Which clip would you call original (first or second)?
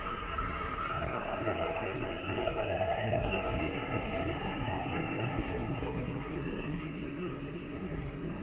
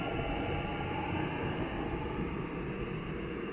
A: second